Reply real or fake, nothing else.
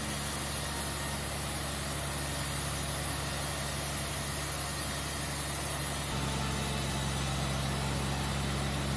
real